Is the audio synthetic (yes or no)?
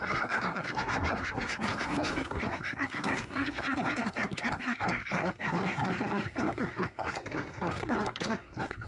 yes